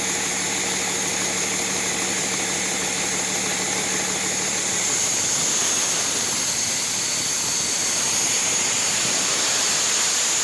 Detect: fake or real real